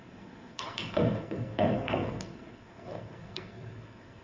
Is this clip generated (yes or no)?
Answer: yes